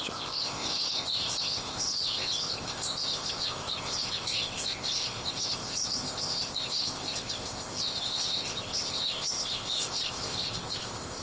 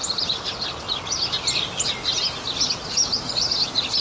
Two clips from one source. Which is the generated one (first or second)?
first